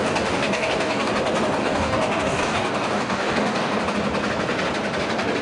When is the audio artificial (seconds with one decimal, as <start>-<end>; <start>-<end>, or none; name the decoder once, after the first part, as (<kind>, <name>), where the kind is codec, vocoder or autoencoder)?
0.0-1.1 (codec, DAC); 1.6-3.8